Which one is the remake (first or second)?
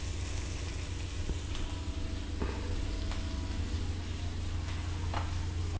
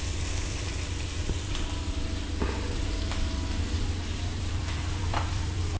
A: second